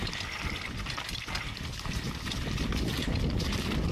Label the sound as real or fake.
real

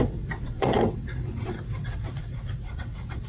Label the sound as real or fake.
fake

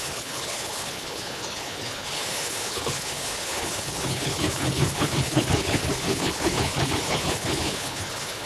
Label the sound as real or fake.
fake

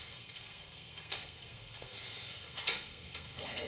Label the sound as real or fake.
fake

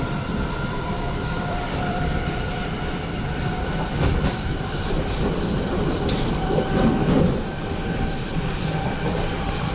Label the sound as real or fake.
fake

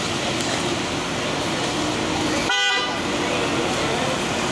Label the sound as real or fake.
real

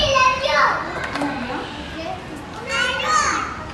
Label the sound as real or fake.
real